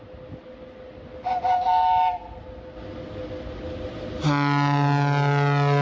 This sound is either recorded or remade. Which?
recorded